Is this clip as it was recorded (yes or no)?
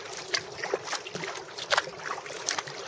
no